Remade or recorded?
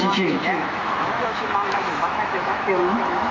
remade